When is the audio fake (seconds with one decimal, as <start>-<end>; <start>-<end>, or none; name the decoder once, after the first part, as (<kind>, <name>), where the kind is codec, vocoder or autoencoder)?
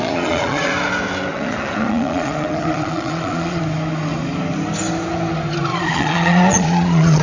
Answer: 0.0-0.7 (vocoder, Vocos); 1.3-3.6; 5.7-7.2